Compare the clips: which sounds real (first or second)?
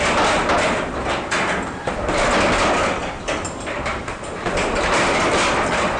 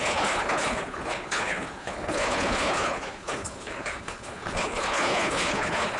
first